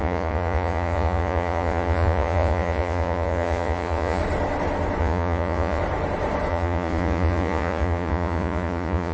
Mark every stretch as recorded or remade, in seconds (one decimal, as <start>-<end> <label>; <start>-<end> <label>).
0.0-4.2 remade; 4.2-5.0 recorded; 5.0-5.8 remade; 5.8-6.5 recorded; 6.5-9.1 remade